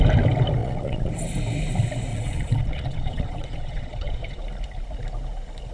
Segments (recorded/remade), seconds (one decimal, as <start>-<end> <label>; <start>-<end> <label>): 0.0-0.6 recorded; 0.6-1.1 remade; 1.1-2.1 recorded; 2.1-4.4 remade; 4.4-5.7 recorded